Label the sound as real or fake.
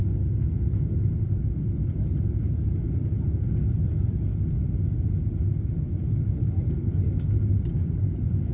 real